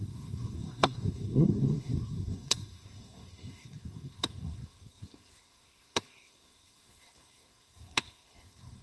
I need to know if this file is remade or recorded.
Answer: remade